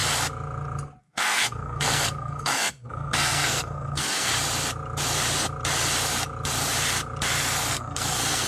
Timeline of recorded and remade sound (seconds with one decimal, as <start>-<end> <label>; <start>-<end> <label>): 0.0-1.0 recorded; 1.0-4.3 remade; 4.3-7.7 recorded; 7.7-8.5 remade